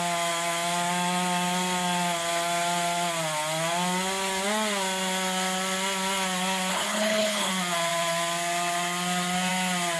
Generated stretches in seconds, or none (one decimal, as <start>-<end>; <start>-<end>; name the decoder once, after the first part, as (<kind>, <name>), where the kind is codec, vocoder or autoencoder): 6.7-7.5 (codec, HILCodec)